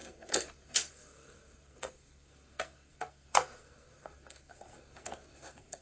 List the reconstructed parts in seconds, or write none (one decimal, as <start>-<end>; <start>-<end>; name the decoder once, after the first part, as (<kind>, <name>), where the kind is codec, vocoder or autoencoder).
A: 0.0-5.8 (codec, SNAC)